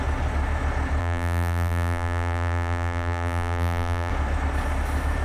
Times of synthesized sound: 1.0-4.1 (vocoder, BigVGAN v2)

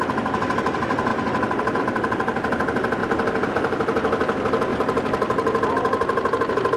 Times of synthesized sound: none

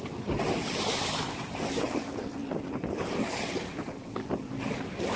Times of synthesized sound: none

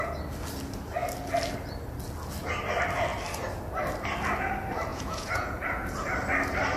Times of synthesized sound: 4.9-5.9 (vocoder, Vocos)

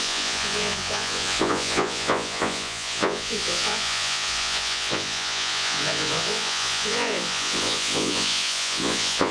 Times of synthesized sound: 0.0-9.3 (vocoder, Vocos)

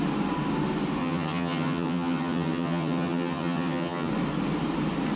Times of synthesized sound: 1.0-4.1 (vocoder, HiFi-GAN)

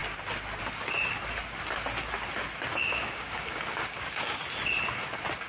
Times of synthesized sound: 2.7-4.4 (codec, DAC)